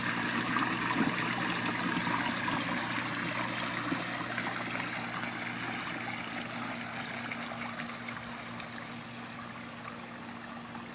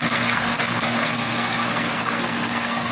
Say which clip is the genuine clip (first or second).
first